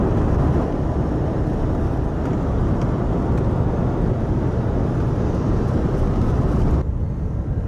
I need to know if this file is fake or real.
real